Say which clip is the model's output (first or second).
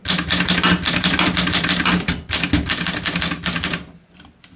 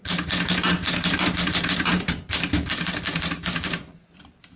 second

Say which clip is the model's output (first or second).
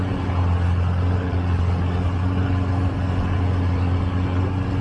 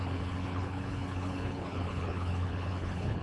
second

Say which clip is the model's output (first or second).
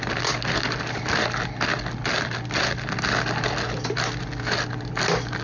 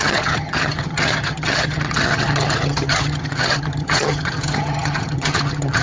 second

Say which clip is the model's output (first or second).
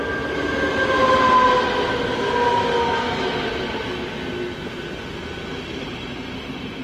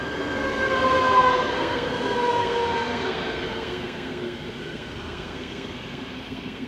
second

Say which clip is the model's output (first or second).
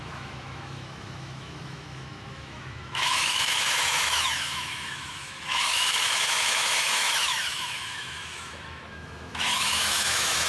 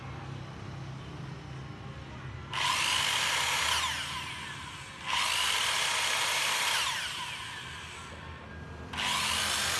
first